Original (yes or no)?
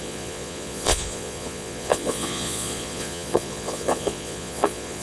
no